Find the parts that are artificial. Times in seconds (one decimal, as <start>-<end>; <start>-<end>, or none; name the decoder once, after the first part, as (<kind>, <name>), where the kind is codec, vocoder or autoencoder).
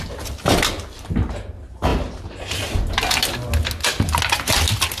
none